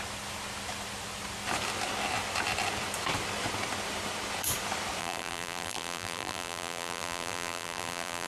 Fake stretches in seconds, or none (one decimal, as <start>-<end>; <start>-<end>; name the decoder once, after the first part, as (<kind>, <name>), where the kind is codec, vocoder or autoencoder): 5.0-8.3 (vocoder, BigVGAN v2)